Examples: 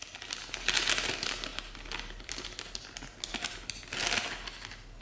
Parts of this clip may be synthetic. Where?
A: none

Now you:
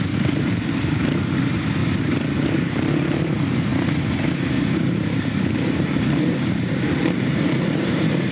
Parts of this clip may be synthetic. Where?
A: 0.0-1.8; 2.5-8.3